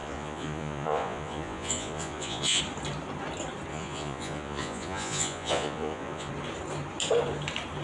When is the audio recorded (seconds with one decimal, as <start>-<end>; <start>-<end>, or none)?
2.6-3.7; 6.3-7.8

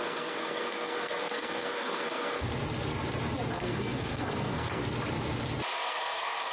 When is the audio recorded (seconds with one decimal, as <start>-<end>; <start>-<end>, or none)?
2.5-3.5; 4.8-5.8

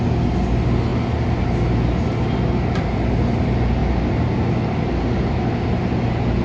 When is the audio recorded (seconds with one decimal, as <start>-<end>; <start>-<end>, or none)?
0.0-6.4

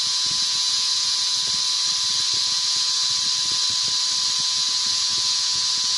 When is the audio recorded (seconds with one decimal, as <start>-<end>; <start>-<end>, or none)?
1.4-2.4; 3.0-4.4

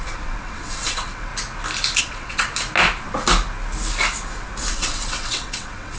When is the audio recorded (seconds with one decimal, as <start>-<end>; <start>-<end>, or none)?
1.3-2.0; 2.5-4.7

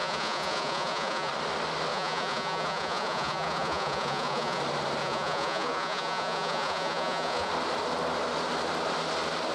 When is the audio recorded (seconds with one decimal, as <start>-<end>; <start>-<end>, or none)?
1.3-1.9; 4.6-5.0; 7.5-9.5

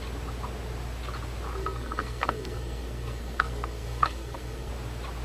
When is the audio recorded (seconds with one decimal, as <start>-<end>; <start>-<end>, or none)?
0.0-1.6; 4.7-5.2

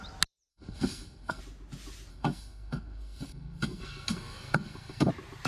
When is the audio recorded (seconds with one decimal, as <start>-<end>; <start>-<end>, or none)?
0.0-0.5; 1.4-2.1; 5.1-5.5